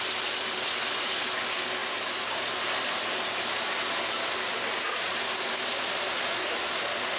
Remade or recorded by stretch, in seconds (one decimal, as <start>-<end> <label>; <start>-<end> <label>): 0.0-7.2 recorded